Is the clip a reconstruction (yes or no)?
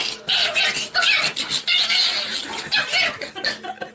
no